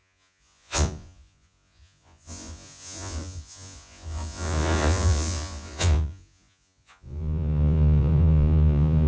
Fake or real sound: fake